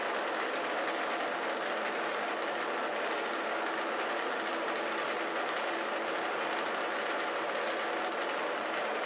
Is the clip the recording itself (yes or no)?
yes